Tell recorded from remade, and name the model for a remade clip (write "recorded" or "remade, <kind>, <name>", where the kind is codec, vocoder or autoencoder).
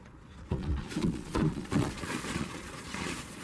remade, vocoder, Vocos